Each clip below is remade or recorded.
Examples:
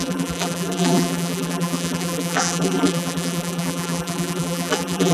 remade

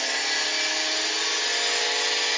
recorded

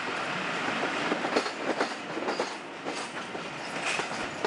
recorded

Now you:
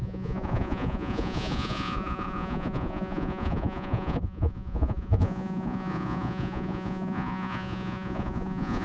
remade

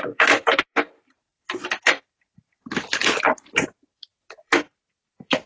remade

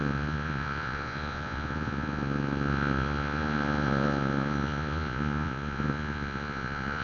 remade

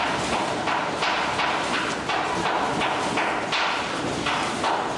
recorded